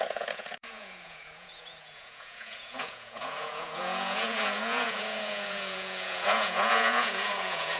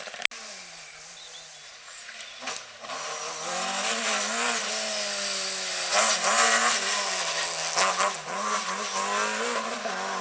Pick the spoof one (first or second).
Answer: first